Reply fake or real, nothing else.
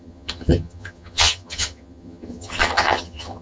fake